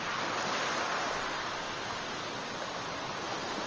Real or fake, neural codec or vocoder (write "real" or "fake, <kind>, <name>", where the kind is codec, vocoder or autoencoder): real